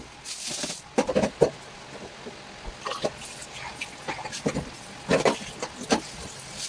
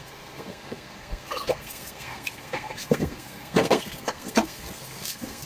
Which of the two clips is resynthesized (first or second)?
second